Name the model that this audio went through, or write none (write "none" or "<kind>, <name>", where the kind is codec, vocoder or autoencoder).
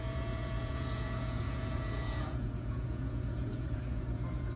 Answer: vocoder, Vocos